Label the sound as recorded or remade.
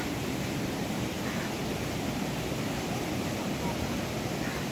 recorded